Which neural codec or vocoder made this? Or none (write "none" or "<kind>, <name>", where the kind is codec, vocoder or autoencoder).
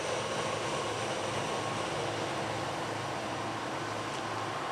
none